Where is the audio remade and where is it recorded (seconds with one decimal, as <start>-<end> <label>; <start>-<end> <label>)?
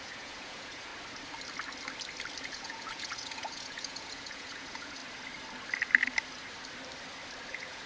0.0-0.9 remade; 0.9-2.4 recorded; 2.4-5.0 remade; 5.0-7.5 recorded; 7.5-7.9 remade